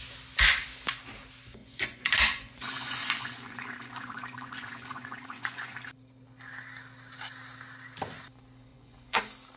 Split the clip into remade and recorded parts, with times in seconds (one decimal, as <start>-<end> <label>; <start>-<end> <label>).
0.0-1.6 recorded; 1.6-5.8 remade; 5.8-8.7 recorded; 8.7-9.2 remade; 9.2-9.6 recorded